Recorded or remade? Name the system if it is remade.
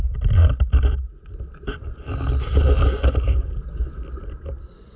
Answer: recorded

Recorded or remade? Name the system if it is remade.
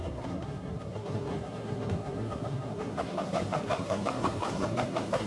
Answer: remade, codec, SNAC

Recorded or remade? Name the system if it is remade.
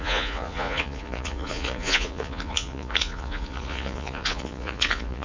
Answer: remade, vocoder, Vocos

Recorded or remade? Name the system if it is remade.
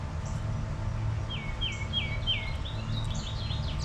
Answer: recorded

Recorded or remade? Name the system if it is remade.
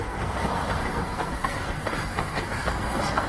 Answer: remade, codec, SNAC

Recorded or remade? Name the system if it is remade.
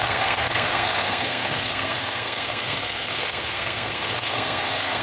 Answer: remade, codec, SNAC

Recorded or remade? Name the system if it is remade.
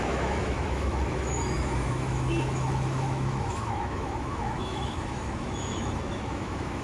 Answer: remade, autoencoder, DAC-VAE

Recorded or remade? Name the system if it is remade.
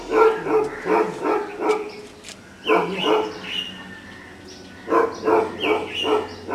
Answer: recorded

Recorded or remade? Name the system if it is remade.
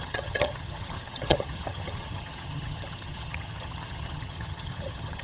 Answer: remade, vocoder, HiFi-GAN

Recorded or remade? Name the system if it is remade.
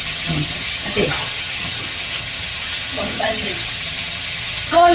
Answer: remade, vocoder, HiFi-GAN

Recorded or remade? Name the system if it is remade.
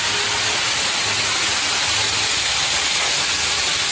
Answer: recorded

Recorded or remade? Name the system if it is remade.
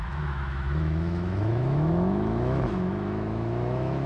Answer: remade, autoencoder, DAC-VAE